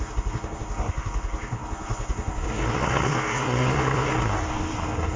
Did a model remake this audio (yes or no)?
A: yes